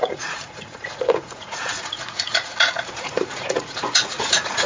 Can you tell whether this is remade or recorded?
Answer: remade